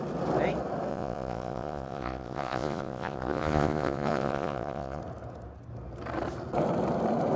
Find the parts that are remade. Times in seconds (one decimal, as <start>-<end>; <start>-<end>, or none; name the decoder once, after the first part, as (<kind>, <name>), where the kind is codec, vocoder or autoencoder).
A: 0.9-5.0 (vocoder, Vocos)